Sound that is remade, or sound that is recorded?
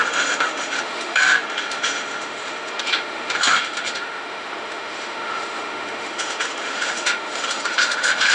remade